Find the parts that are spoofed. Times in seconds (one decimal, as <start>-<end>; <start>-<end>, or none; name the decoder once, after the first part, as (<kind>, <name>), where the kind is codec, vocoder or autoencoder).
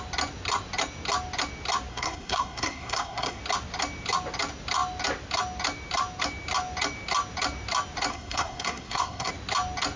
1.9-3.4 (codec, SNAC); 8.1-9.3